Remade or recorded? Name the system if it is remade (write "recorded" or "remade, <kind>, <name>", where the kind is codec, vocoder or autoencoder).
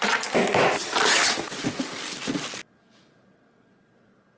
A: recorded